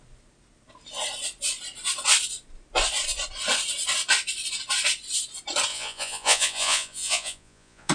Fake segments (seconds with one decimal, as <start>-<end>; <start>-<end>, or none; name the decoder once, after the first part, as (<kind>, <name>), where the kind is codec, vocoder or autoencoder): 5.7-7.9 (vocoder, Vocos)